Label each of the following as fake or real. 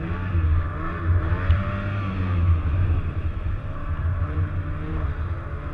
fake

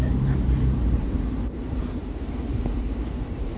fake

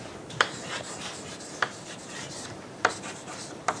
fake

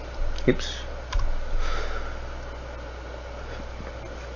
real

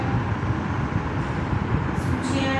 real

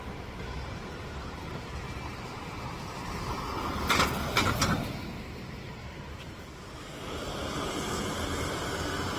real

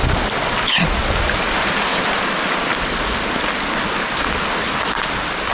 real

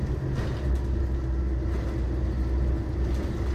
real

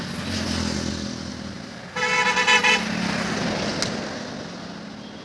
real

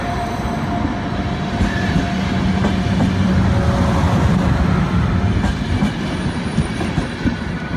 real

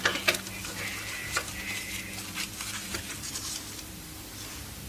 real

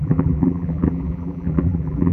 fake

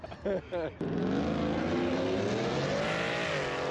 real